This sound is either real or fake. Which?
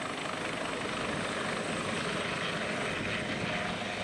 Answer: real